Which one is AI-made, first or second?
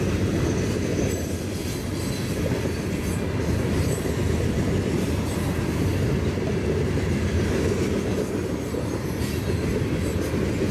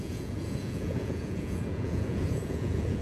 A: second